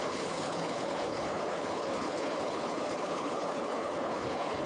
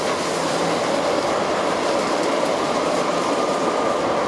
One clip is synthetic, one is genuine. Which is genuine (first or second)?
second